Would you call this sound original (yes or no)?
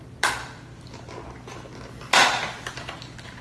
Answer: yes